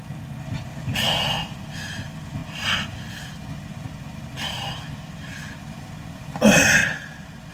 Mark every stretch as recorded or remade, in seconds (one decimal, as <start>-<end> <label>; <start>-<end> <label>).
0.0-7.5 recorded

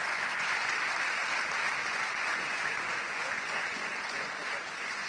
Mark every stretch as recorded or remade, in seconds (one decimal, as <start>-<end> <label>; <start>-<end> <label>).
0.0-0.7 remade; 0.7-1.8 recorded; 1.8-5.1 remade

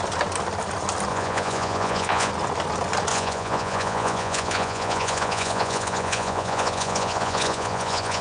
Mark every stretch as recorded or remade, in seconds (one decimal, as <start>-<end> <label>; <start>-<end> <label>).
0.0-1.1 recorded; 1.1-2.3 remade; 2.3-3.1 recorded; 3.1-8.2 remade